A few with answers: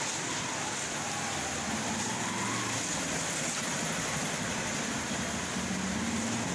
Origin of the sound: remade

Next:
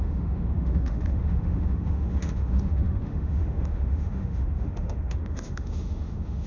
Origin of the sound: remade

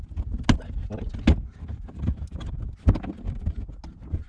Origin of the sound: recorded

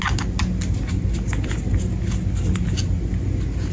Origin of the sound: recorded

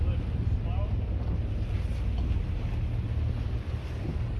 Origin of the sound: recorded